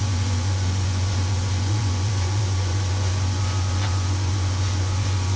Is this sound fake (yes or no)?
yes